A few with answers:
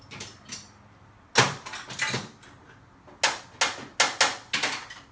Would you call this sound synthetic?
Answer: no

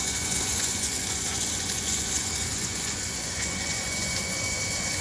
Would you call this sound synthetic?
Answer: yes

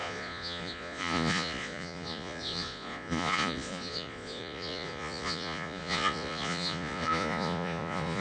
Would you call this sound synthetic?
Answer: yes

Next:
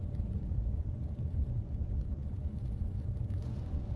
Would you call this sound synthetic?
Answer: yes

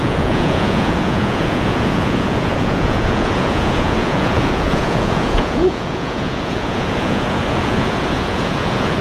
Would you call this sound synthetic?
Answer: yes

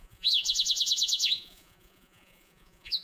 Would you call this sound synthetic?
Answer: yes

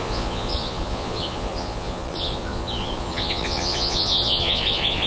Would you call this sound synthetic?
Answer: yes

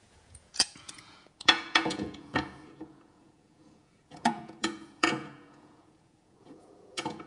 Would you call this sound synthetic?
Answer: yes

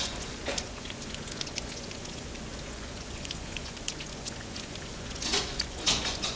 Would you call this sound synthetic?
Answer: yes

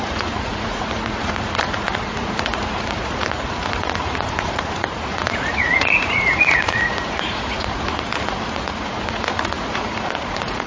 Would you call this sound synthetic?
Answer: yes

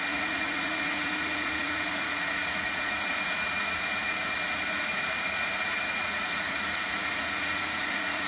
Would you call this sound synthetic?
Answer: yes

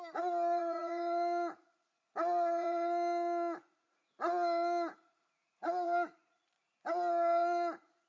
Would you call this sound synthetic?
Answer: yes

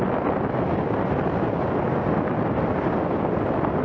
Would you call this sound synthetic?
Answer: no